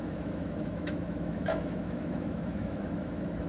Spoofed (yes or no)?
yes